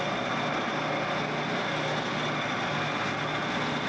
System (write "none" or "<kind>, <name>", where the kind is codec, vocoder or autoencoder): none